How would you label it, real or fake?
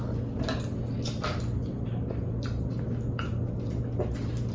real